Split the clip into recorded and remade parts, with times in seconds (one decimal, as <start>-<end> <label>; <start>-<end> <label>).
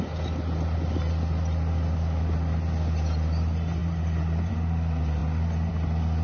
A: 0.0-6.2 recorded